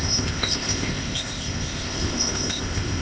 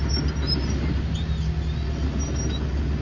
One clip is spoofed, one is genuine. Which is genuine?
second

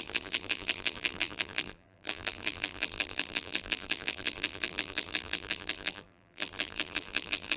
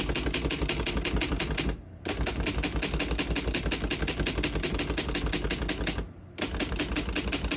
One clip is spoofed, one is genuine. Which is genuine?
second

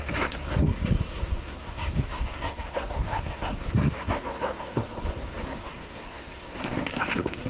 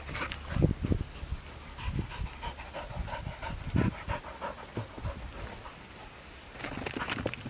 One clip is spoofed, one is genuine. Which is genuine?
second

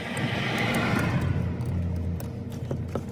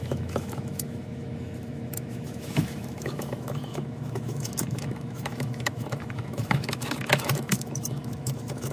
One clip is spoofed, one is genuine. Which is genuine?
first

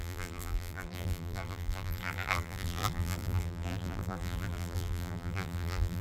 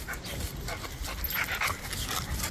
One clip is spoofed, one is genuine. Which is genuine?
second